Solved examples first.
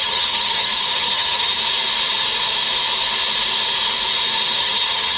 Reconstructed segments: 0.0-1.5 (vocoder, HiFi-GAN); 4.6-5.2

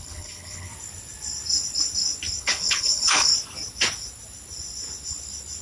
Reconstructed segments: 0.0-0.7 (codec, HILCodec); 2.4-3.3

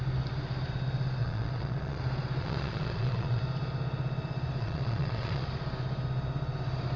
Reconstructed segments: 1.2-2.0 (vocoder, Vocos); 2.4-3.4; 4.6-5.4